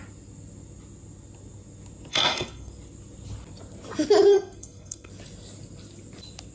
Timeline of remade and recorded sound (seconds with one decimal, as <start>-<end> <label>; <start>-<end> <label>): 0.0-2.1 recorded; 2.1-2.7 remade; 2.7-4.3 recorded; 4.3-5.1 remade; 5.1-6.5 recorded